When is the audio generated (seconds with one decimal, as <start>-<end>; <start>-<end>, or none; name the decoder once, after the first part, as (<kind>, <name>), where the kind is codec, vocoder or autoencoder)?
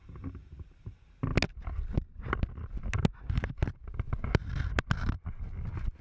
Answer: none